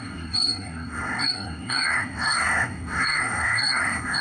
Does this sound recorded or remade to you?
remade